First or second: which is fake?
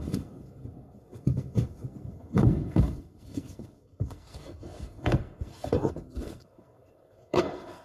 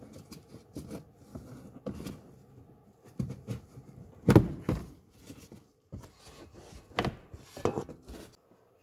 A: first